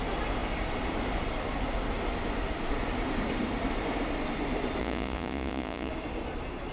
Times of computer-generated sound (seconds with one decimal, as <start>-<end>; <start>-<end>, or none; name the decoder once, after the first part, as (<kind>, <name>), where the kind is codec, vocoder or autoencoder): 4.8-5.9 (vocoder, Vocos)